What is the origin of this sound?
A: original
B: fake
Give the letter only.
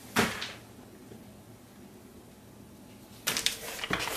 A